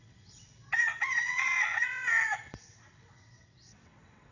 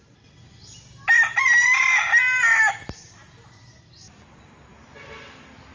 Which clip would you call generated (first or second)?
first